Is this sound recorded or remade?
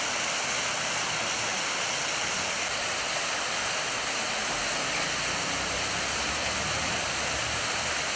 recorded